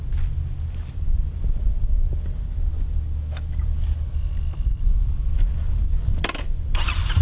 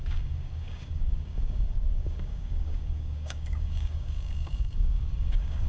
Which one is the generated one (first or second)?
second